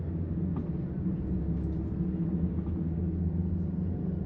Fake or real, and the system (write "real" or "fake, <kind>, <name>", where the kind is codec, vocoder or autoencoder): real